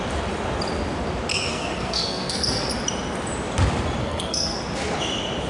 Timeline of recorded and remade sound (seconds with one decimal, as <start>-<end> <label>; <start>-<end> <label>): 0.0-1.3 recorded; 1.3-2.7 remade; 2.7-4.0 recorded; 4.0-4.6 remade; 4.6-5.5 recorded